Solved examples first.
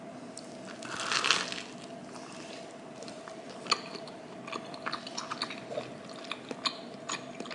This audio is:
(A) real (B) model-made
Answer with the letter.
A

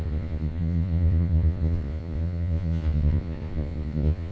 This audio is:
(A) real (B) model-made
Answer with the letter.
B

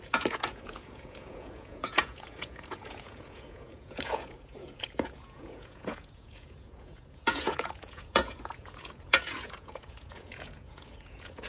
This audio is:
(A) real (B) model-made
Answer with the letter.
B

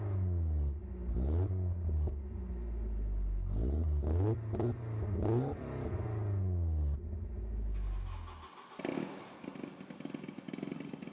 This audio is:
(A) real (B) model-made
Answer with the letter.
A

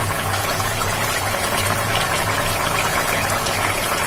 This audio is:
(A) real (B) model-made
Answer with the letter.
B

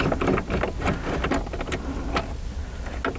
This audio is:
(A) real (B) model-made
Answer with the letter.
A